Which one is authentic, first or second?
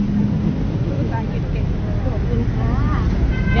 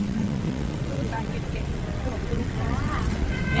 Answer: first